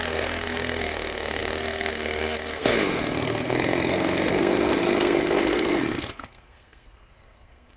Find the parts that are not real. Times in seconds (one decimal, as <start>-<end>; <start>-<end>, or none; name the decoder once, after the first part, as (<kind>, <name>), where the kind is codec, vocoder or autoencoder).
0.0-7.8 (codec, SNAC)